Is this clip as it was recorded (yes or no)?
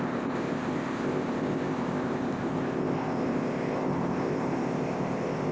no